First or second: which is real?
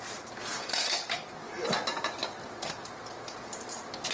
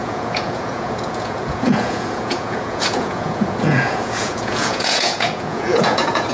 first